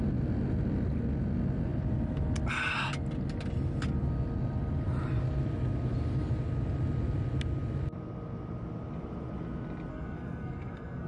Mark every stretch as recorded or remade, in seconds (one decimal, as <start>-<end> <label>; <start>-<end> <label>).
0.0-9.9 recorded; 9.9-11.1 remade